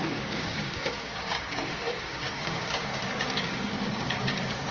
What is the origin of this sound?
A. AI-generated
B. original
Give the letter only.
A